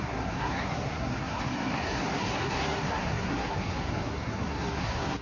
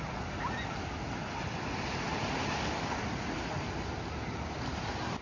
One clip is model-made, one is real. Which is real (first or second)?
second